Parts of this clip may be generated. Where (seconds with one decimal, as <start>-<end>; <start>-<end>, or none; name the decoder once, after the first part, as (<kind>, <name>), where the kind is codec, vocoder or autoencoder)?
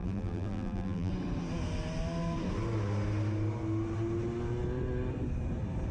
0.0-1.1 (vocoder, BigVGAN v2)